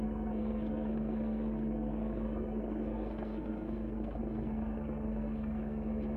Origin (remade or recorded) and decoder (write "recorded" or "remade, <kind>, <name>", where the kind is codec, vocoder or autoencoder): remade, codec, SNAC